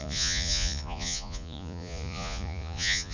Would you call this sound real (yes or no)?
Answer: no